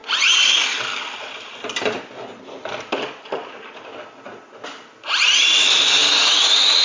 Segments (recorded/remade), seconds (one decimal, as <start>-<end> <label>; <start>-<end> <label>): 0.0-6.0 recorded; 6.0-6.8 remade